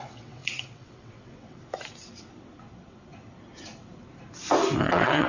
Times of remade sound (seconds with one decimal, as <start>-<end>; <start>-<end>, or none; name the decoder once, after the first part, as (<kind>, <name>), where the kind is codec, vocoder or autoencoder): 0.0-1.6 (vocoder, WaveNeXt); 4.8-5.3